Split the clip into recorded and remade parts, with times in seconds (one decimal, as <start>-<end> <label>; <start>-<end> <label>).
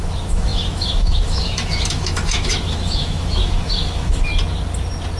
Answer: 0.0-4.3 remade; 4.3-5.2 recorded